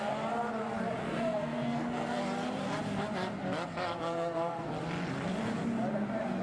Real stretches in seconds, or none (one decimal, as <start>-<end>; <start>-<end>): 0.0-1.0; 2.2-4.0; 4.7-6.4